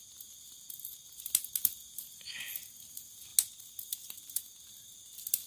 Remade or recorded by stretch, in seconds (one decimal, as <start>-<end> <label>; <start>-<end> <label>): 0.0-5.5 recorded